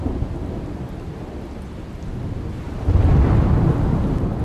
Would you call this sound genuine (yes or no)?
yes